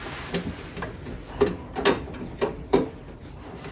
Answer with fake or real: real